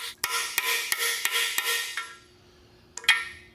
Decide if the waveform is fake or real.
real